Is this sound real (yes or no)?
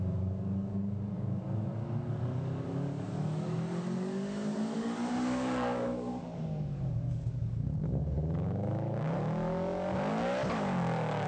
no